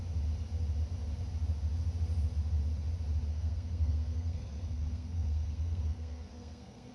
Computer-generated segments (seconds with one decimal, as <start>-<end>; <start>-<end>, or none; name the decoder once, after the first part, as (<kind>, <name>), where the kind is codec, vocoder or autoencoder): 3.3-6.9 (codec, SNAC)